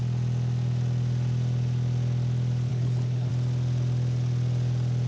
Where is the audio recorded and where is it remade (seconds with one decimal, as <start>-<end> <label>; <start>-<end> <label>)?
0.0-2.7 recorded; 2.7-3.3 remade; 3.3-5.1 recorded